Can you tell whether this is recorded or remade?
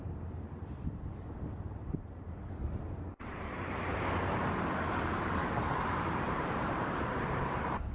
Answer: remade